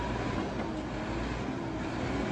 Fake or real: real